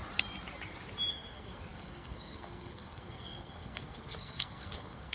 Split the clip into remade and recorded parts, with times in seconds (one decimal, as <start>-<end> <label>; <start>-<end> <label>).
0.0-1.1 recorded; 1.1-5.1 remade